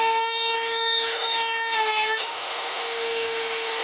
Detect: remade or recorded remade